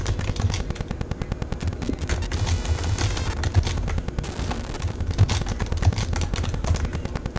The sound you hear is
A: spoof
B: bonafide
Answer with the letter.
B